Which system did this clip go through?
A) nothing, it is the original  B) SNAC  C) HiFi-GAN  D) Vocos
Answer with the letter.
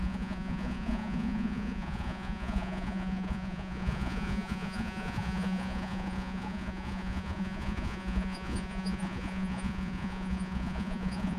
D